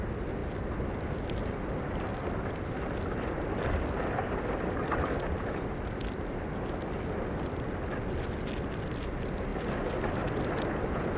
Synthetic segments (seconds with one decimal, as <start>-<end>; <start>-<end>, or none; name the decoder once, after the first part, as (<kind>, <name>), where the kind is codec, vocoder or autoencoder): none